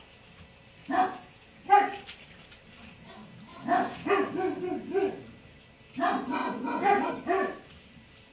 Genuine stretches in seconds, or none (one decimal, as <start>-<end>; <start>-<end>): 0.0-0.8; 1.6-3.5; 4.1-6.4; 7.1-8.3